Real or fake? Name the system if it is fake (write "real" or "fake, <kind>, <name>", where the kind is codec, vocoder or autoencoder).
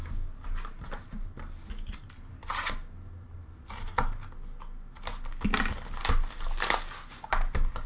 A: real